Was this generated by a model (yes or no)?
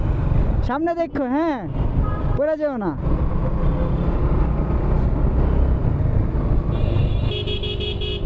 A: no